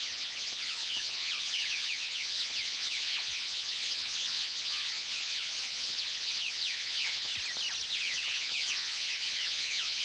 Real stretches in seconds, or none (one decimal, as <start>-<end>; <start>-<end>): 7.3-7.9